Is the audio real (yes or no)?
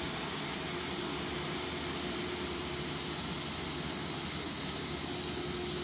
yes